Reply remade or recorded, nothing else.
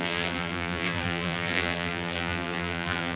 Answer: remade